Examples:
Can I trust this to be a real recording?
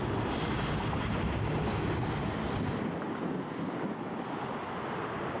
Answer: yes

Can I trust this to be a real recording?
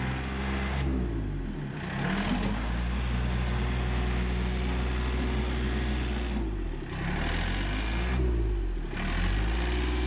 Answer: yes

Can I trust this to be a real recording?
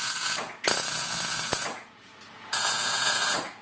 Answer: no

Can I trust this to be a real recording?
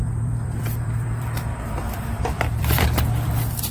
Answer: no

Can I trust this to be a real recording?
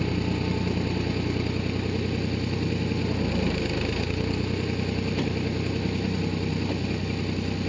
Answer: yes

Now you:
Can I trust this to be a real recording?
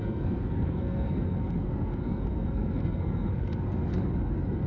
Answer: no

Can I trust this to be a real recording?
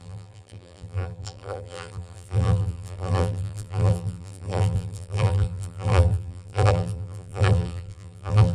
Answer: no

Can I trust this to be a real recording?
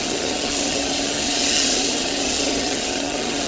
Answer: no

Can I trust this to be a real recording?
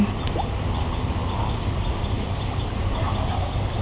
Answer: yes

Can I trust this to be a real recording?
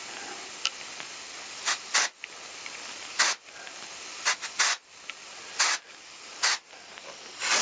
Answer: yes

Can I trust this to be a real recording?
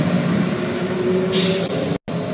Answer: yes